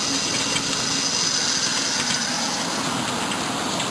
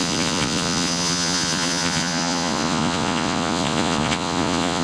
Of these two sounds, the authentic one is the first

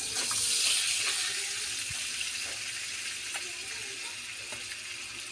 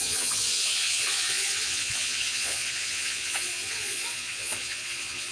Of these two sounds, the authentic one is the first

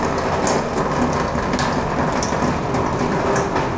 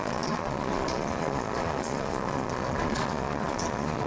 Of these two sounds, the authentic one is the first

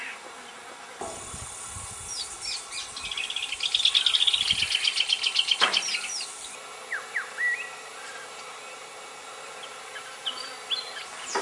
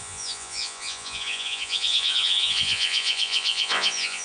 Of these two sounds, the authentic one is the first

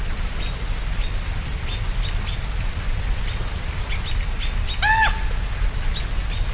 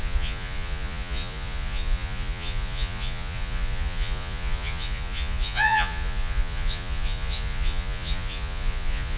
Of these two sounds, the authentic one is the first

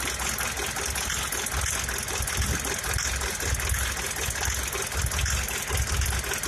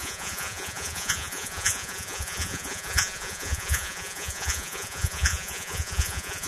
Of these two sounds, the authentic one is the first